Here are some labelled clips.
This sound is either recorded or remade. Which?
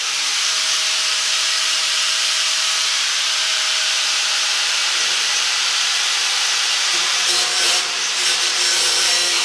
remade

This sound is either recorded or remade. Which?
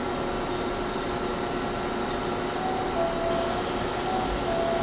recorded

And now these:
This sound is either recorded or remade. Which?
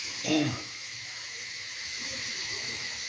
remade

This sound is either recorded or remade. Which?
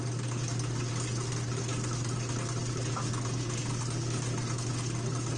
recorded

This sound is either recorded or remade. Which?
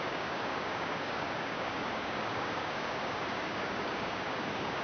remade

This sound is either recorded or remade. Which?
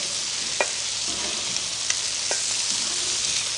recorded